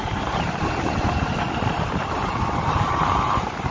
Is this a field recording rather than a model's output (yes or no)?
no